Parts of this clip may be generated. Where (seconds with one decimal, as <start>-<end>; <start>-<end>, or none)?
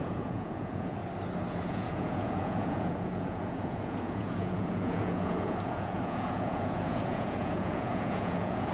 0.0-1.0; 1.5-8.7